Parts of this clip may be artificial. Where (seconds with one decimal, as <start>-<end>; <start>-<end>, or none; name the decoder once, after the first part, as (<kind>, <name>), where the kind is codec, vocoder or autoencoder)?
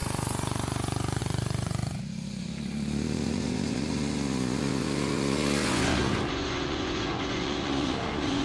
0.0-8.4 (vocoder, Vocos)